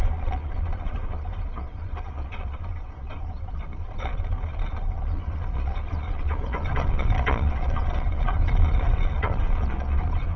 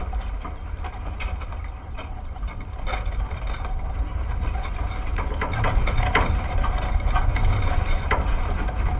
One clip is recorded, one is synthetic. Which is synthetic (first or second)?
first